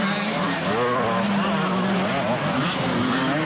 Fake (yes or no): no